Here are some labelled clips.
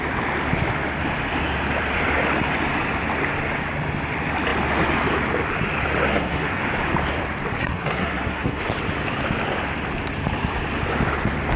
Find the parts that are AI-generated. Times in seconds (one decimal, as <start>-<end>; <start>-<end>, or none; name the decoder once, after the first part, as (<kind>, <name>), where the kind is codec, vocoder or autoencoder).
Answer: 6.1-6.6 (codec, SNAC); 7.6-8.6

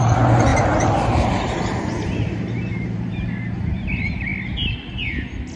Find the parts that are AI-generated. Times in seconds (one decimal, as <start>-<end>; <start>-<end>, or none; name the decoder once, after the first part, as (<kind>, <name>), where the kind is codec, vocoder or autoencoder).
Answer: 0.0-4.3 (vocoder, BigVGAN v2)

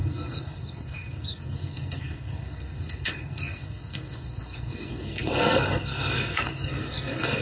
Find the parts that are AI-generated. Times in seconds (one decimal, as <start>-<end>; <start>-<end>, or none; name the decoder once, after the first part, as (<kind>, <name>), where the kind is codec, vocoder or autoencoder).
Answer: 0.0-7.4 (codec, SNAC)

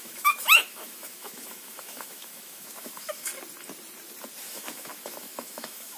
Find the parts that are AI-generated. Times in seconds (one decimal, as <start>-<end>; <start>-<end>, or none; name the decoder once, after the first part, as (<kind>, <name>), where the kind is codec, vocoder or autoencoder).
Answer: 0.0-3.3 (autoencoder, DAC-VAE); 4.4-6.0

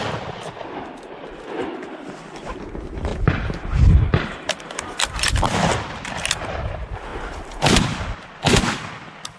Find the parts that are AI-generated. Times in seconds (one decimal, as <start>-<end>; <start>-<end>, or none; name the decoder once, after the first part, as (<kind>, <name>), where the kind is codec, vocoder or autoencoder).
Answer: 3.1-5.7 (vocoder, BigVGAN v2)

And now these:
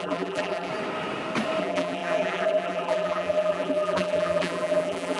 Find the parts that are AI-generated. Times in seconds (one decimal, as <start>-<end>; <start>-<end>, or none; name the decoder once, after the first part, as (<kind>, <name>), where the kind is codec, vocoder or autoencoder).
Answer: 0.0-0.7 (vocoder, BigVGAN v2); 1.6-5.2